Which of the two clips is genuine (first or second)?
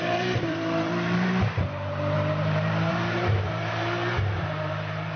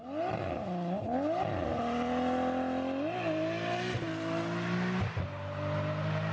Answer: second